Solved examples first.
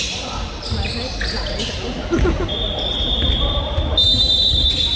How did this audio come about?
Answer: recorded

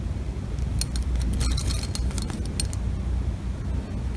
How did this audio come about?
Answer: recorded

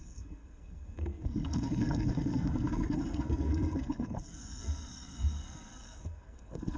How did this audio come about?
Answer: remade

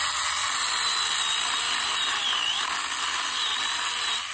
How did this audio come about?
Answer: recorded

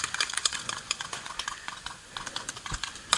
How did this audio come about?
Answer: remade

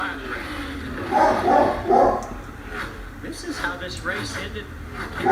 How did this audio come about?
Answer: recorded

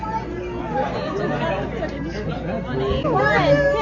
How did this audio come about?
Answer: recorded